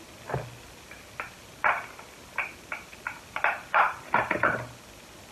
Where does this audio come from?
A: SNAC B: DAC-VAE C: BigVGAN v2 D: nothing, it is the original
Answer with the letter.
D